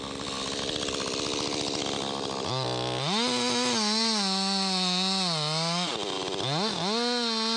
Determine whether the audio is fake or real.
real